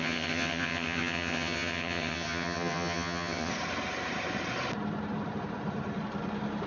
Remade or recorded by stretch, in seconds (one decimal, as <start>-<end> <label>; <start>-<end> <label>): 0.0-3.5 remade; 3.5-6.7 recorded